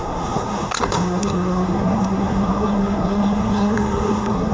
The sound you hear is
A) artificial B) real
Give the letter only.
A